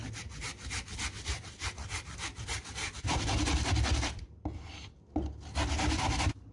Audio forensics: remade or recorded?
recorded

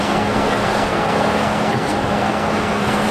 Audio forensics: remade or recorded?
remade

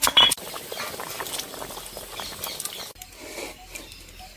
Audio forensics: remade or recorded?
recorded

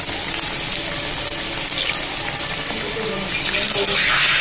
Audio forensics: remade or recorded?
recorded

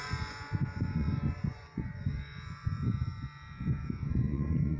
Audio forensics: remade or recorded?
remade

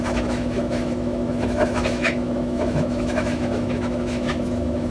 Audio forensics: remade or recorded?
remade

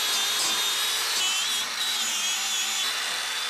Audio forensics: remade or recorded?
recorded